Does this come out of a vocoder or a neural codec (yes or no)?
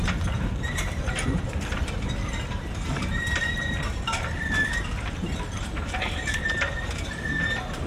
yes